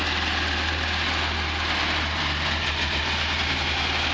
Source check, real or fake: real